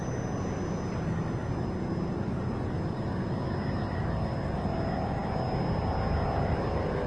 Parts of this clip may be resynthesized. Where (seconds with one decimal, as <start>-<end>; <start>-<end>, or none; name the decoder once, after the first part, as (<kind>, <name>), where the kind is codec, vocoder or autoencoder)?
none